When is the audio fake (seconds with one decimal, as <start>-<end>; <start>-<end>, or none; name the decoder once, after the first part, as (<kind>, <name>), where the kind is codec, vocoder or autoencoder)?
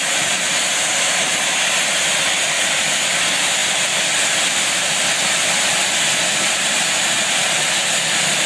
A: 3.6-7.8 (vocoder, BigVGAN v2)